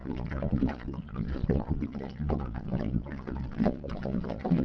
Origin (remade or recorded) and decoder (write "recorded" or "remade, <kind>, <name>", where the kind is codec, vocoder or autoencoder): remade, vocoder, Vocos